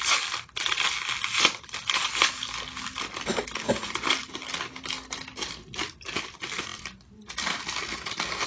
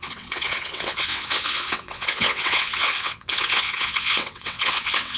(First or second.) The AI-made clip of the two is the second